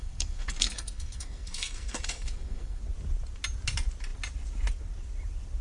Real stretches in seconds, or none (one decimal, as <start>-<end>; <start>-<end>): 2.8-5.6

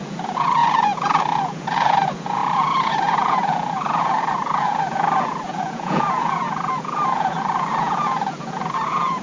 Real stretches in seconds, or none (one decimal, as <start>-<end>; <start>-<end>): none

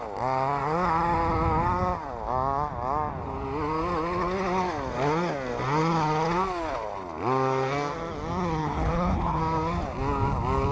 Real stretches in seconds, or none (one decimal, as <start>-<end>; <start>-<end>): 0.0-8.6; 9.4-10.7

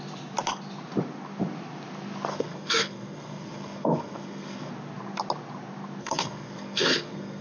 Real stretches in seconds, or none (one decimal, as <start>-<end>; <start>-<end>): 0.0-2.3; 4.7-6.0